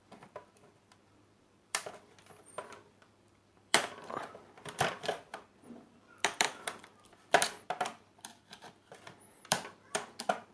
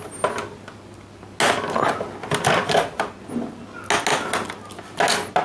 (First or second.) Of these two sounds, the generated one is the first